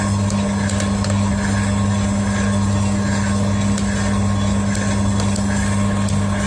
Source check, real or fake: real